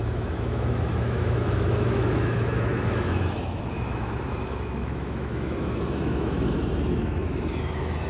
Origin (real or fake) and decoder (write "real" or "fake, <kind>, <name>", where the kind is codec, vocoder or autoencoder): fake, autoencoder, DAC-VAE